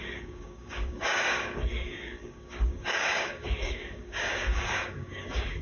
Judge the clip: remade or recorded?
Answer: remade